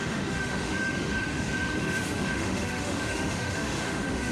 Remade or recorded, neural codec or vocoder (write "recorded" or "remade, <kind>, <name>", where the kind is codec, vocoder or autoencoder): remade, autoencoder, DAC-VAE